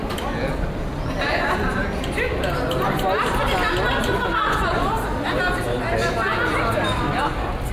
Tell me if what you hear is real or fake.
real